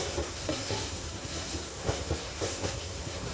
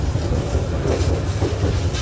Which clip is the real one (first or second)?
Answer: second